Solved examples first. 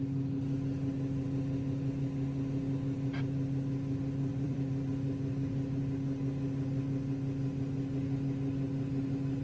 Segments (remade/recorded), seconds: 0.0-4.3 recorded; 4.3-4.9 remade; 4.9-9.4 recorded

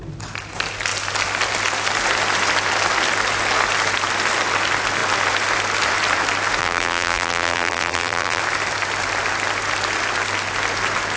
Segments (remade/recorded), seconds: 0.0-6.6 recorded; 6.6-8.4 remade; 8.4-11.2 recorded

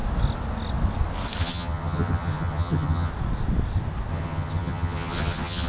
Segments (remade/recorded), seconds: 0.0-1.4 recorded; 1.4-3.1 remade; 3.1-4.1 recorded; 4.1-5.7 remade

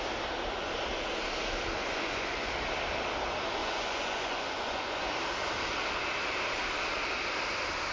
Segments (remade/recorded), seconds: 0.0-1.8 recorded; 1.8-2.5 remade; 2.5-3.6 recorded; 3.6-5.1 remade; 5.1-7.9 recorded

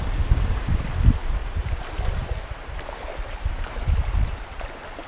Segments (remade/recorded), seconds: 0.0-5.1 recorded

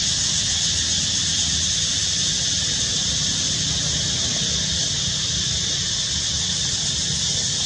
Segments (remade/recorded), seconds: 0.0-7.7 recorded

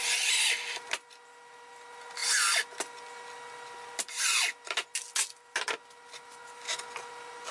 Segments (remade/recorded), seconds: 0.0-7.5 recorded